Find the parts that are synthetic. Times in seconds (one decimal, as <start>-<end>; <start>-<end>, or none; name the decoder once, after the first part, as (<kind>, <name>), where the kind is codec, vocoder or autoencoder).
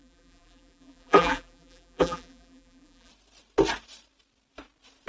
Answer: 0.0-3.1 (vocoder, BigVGAN v2)